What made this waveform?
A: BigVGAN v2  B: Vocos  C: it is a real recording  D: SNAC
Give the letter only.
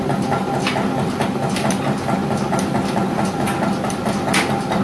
C